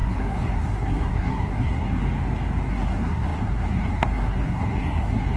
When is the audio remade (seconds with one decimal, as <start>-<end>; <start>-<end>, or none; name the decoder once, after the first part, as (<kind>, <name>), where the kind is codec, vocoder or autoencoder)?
0.0-2.0 (codec, SNAC); 2.7-5.4

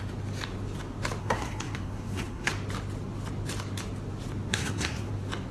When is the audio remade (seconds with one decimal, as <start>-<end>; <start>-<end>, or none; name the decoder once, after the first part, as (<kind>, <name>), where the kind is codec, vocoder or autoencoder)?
1.2-2.5 (codec, SNAC); 4.5-5.1

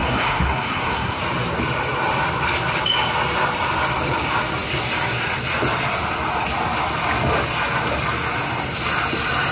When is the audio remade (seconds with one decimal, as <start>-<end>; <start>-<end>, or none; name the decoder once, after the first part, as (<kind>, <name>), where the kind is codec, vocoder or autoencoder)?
0.0-1.2 (codec, SNAC)